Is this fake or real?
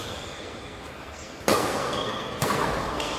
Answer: fake